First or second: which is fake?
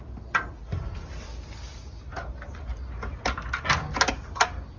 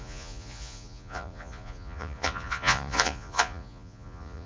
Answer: second